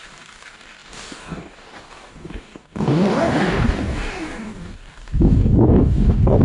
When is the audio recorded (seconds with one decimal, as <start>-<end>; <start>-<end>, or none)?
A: none